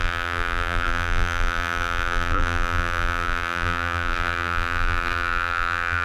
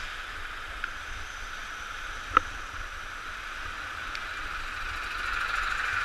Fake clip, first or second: first